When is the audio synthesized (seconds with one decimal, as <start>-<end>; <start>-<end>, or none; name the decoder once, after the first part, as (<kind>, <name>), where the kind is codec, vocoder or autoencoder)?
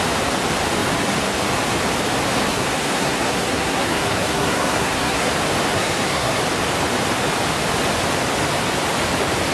2.5-5.3 (codec, SNAC); 5.7-6.4